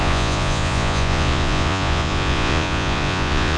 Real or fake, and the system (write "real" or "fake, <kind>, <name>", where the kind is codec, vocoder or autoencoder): fake, vocoder, Vocos